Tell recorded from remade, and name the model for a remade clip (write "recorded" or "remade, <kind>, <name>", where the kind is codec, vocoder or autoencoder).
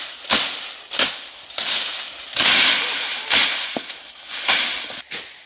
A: recorded